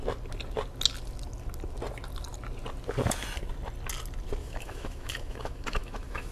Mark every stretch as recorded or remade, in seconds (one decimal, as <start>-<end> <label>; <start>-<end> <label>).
0.0-4.4 recorded; 4.4-6.3 remade